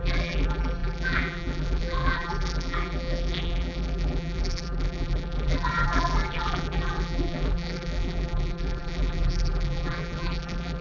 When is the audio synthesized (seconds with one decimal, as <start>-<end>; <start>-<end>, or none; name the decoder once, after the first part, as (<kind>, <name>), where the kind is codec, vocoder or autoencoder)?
0.0-10.8 (vocoder, BigVGAN v2)